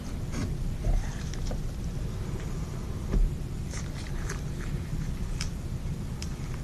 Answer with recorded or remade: recorded